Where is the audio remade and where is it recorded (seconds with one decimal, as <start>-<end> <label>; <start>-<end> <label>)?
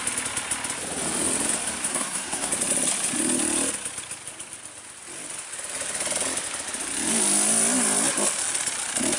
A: 0.0-1.9 recorded; 1.9-2.5 remade; 2.5-9.2 recorded